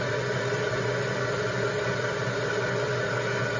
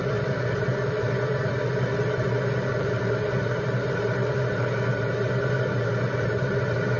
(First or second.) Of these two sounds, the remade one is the second